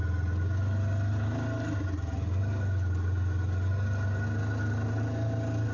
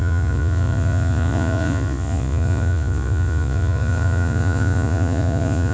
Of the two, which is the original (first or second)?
first